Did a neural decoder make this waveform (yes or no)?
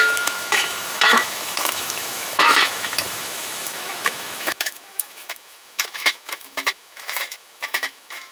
yes